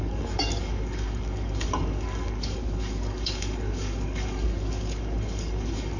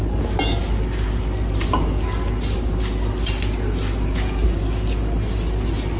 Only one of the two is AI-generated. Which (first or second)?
first